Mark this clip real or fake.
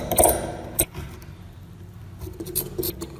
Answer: real